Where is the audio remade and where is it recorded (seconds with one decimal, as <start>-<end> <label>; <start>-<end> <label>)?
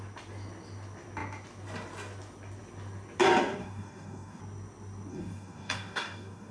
0.0-3.6 recorded; 3.6-4.4 remade; 4.4-5.1 recorded; 5.1-6.5 remade